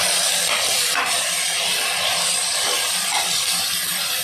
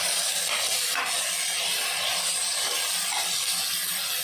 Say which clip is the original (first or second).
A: second